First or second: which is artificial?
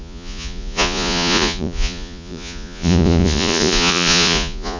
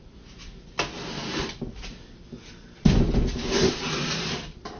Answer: first